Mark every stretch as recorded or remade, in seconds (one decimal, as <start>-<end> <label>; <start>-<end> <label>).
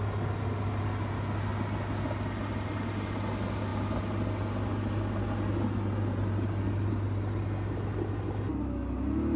0.0-9.4 recorded